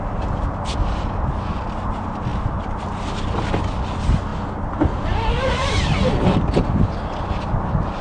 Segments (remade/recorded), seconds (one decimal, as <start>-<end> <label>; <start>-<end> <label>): 0.0-4.3 recorded; 4.3-7.0 remade; 7.0-8.0 recorded